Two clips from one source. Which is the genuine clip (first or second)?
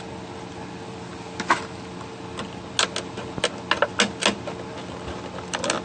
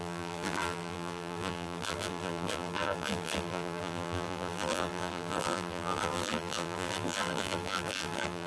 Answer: first